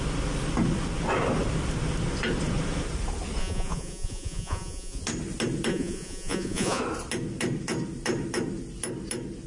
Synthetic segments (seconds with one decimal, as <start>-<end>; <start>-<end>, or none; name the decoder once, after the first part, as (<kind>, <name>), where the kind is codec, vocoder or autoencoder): 3.4-5.0 (vocoder, Vocos); 5.7-6.8